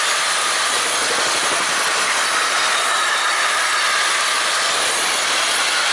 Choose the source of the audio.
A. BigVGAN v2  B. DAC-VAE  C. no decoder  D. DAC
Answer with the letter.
C